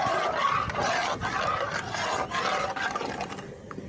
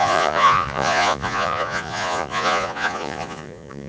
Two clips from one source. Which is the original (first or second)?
first